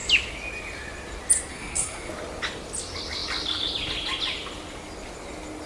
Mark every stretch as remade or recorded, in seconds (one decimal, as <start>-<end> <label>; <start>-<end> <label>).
0.0-1.5 recorded; 1.5-2.1 remade; 2.1-5.7 recorded